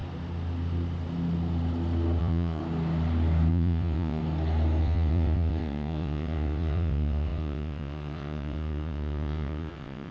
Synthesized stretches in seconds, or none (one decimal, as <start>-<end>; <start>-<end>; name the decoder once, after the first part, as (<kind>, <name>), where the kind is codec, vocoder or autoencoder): 2.2-2.6 (vocoder, WaveNeXt); 3.5-4.2; 4.8-10.1

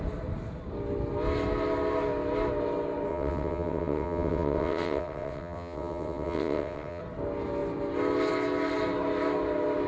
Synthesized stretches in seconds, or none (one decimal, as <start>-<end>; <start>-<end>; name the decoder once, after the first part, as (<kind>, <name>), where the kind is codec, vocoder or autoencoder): 3.1-7.0 (vocoder, WaveNeXt)